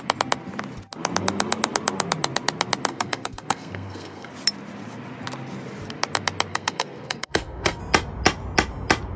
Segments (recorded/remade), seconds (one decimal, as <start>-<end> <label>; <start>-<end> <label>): 0.0-2.9 recorded; 2.9-4.3 remade; 4.3-6.5 recorded; 6.5-7.8 remade; 7.8-9.2 recorded